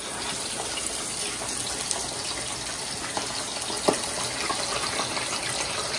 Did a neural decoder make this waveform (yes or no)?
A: no